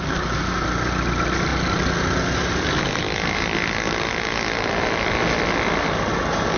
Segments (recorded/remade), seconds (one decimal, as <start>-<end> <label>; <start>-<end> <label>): 0.0-6.6 recorded